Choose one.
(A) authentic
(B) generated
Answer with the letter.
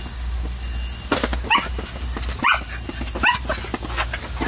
A